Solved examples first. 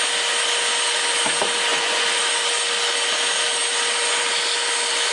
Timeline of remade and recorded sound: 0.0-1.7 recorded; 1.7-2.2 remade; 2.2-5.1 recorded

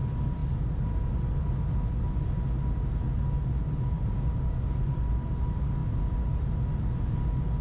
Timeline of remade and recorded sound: 0.0-0.4 remade; 0.4-3.9 recorded; 3.9-5.8 remade; 5.8-7.6 recorded

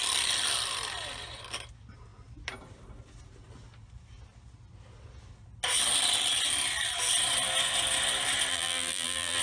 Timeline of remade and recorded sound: 0.0-8.5 recorded; 8.5-9.4 remade

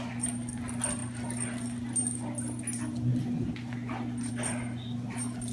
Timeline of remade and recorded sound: 0.0-5.5 recorded

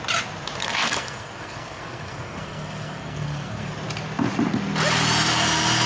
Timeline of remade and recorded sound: 0.0-0.6 recorded; 0.6-3.7 remade; 3.7-5.9 recorded